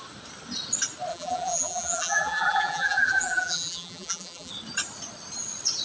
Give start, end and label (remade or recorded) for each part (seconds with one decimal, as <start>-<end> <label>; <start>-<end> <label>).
0.0-1.1 recorded; 1.1-4.5 remade; 4.5-5.8 recorded